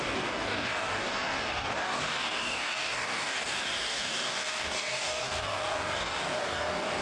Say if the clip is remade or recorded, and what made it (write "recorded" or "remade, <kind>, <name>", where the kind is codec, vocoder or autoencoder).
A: remade, codec, DAC